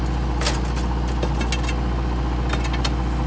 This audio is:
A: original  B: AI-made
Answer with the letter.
A